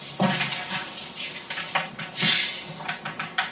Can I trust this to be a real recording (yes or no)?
yes